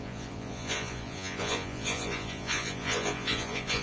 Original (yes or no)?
no